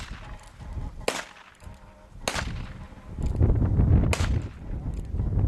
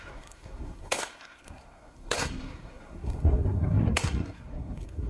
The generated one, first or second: second